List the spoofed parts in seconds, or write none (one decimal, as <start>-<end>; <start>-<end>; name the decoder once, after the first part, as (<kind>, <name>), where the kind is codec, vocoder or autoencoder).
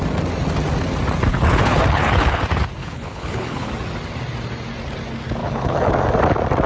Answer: 1.3-2.4 (codec, HILCodec); 2.8-3.7; 5.4-5.9